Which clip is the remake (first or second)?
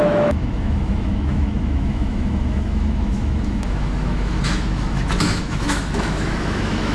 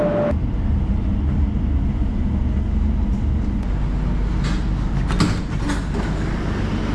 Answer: first